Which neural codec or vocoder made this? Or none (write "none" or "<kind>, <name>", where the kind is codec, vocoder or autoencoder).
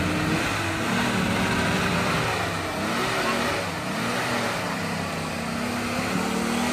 none